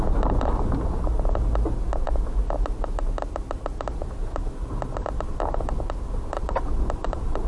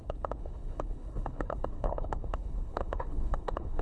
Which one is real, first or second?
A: first